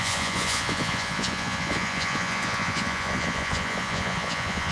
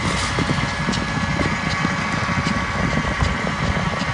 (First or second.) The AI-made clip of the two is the first